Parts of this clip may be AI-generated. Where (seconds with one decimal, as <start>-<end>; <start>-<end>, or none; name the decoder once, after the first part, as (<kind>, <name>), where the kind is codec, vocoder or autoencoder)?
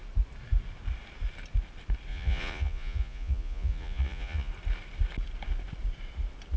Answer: 2.1-4.5 (vocoder, Vocos)